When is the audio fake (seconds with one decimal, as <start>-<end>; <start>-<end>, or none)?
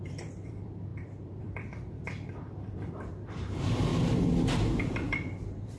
0.0-3.9; 4.8-5.8